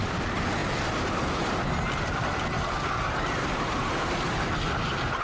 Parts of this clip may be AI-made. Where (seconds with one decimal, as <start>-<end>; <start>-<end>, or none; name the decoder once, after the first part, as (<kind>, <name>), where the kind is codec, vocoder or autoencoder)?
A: none